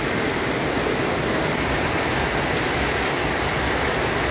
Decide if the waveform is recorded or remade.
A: recorded